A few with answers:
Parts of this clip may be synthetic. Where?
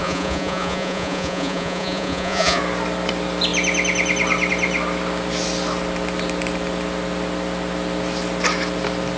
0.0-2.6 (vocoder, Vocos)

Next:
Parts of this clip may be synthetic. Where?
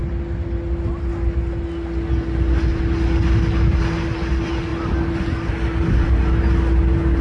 none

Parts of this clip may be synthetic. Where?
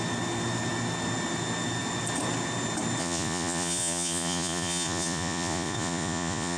3.0-6.6 (vocoder, Vocos)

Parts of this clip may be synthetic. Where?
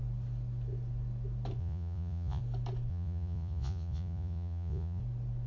1.6-2.4 (vocoder, Vocos); 2.9-5.0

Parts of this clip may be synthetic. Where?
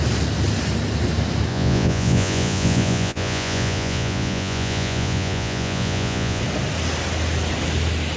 1.5-6.4 (vocoder, Vocos)